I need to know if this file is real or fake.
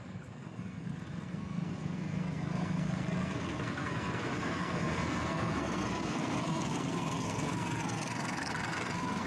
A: fake